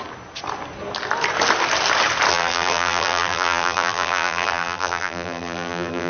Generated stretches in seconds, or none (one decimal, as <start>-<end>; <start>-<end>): 2.3-6.1

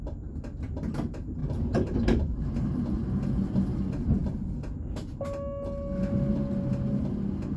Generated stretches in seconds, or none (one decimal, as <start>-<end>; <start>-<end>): 1.4-2.8

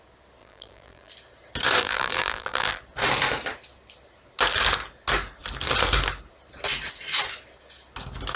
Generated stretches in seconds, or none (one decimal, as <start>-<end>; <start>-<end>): 0.4-1.1; 1.8-2.8

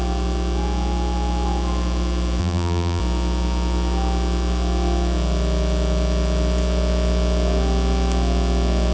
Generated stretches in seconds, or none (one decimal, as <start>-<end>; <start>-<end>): 2.4-3.0

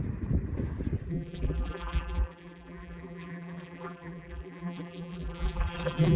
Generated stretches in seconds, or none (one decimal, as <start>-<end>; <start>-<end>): 1.1-6.2

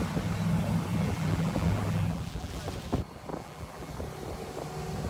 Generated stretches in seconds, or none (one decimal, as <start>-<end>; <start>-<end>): 0.9-2.6; 3.3-3.9

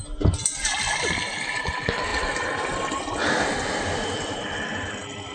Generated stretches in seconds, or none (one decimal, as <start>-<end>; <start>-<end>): none

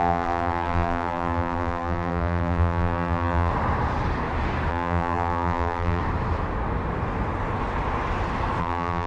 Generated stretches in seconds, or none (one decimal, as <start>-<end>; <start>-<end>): 0.0-3.5; 4.7-6.0; 8.6-9.1